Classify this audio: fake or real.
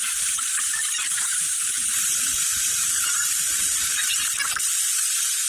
fake